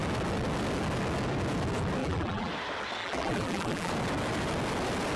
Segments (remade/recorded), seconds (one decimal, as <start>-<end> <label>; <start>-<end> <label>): 0.0-2.0 recorded; 2.0-2.5 remade; 2.5-3.0 recorded; 3.0-3.9 remade; 3.9-5.2 recorded